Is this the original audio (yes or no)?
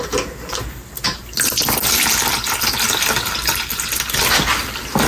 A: yes